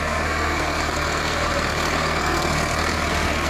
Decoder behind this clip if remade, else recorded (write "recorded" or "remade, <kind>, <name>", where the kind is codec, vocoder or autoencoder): remade, codec, SNAC